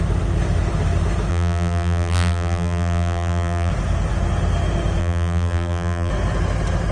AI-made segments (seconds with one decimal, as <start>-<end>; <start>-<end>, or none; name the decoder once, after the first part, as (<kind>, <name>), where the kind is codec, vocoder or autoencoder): 1.3-3.7 (vocoder, BigVGAN v2); 5.0-6.1